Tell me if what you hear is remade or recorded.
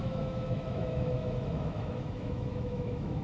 remade